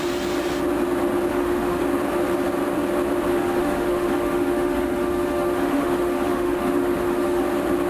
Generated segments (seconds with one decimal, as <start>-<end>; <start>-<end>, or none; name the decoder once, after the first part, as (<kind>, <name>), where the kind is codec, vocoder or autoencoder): 1.3-1.8 (autoencoder, DAC-VAE); 3.3-7.4